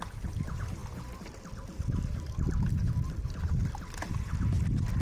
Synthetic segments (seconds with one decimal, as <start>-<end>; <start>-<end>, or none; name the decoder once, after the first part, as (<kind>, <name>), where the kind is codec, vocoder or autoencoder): none